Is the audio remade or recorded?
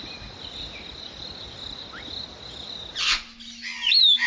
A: recorded